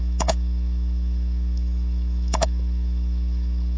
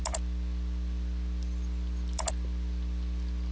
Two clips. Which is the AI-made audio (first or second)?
first